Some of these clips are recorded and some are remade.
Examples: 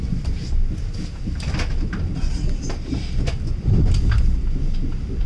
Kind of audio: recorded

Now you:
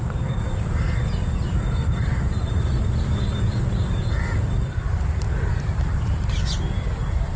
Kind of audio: remade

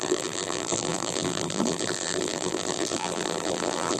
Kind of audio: remade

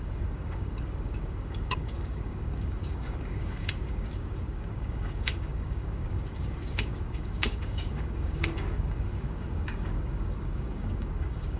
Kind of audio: remade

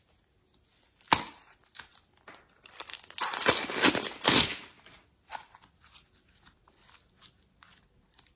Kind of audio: recorded